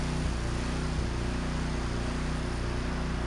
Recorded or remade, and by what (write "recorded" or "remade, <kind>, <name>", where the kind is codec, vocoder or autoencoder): recorded